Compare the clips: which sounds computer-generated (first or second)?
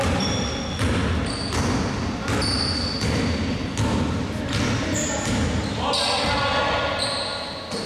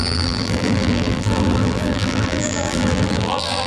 second